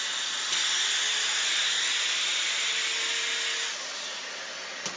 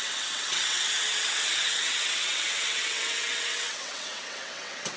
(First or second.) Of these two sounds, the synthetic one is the second